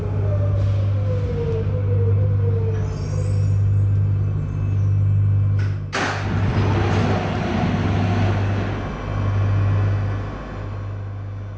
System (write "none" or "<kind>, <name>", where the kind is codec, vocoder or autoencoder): none